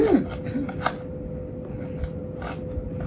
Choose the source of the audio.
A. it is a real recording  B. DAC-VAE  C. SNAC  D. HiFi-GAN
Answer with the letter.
A